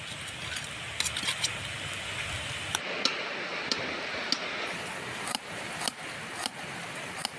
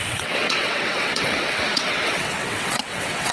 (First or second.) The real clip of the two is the first